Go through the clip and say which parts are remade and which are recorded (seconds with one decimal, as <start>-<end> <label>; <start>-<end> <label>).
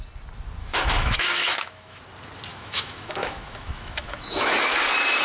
0.0-0.6 recorded; 0.6-2.0 remade; 2.0-2.5 recorded; 2.5-4.6 remade; 4.6-5.2 recorded